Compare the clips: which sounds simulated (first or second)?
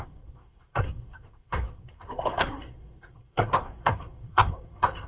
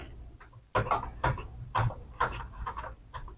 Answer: first